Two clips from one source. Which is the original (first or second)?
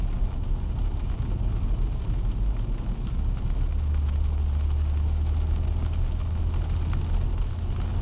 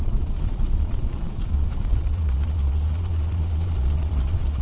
first